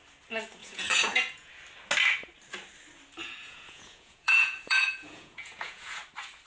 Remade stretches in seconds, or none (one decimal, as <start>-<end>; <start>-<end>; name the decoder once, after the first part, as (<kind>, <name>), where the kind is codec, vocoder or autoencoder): 0.6-1.5 (vocoder, Vocos); 3.2-6.0